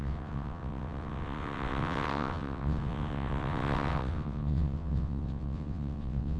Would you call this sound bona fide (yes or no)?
no